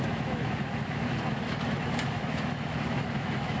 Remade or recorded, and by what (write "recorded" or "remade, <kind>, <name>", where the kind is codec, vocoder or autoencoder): remade, autoencoder, DAC-VAE